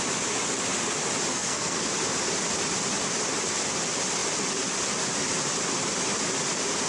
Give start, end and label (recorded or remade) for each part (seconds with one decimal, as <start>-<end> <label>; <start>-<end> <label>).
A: 0.0-1.3 recorded; 1.3-1.9 remade; 1.9-6.9 recorded